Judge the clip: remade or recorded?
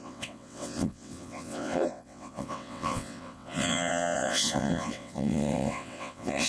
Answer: remade